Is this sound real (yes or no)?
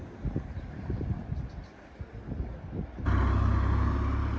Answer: yes